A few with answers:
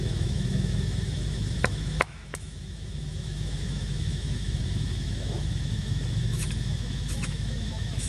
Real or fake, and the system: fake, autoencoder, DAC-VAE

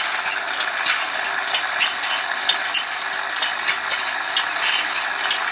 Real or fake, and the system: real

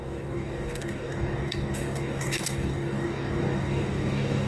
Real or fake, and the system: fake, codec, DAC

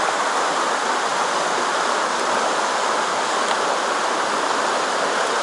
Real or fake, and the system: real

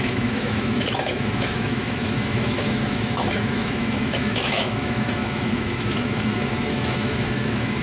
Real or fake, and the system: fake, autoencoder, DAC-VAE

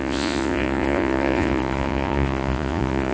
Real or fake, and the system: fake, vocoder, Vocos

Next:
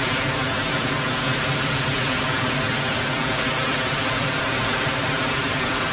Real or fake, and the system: fake, vocoder, BigVGAN v2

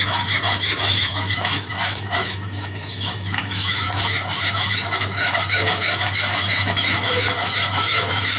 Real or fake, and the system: fake, autoencoder, DAC-VAE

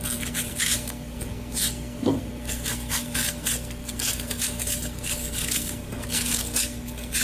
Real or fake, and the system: fake, codec, SNAC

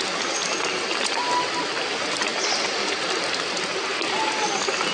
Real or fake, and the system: real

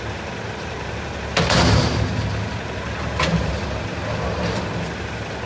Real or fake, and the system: real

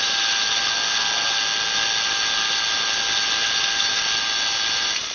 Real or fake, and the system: real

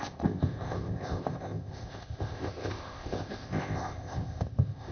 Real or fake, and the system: fake, codec, ZipCodec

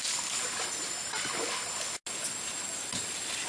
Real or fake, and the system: real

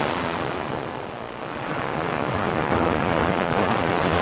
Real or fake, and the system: fake, vocoder, Vocos